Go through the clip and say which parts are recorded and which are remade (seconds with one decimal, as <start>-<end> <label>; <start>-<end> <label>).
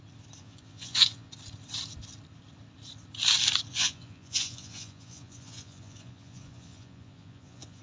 0.0-0.4 recorded; 0.4-1.3 remade; 1.3-3.7 recorded; 3.7-7.8 remade